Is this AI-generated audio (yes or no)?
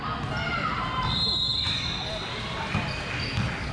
no